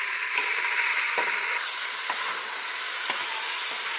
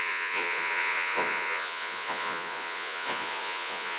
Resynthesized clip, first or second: second